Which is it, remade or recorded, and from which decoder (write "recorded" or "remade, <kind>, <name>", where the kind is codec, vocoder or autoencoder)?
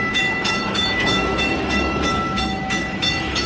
remade, autoencoder, DAC-VAE